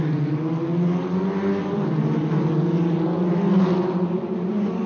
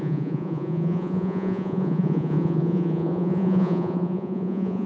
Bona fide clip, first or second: first